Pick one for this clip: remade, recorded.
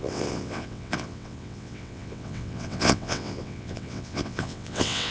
remade